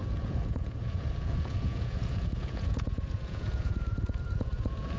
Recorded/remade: remade